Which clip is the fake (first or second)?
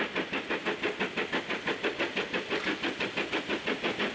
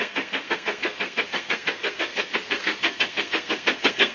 second